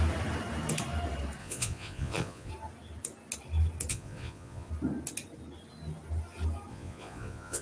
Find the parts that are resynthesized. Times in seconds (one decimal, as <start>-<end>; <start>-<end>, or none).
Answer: 1.4-2.5; 3.9-4.7; 6.7-7.6